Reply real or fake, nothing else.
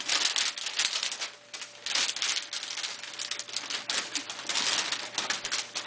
real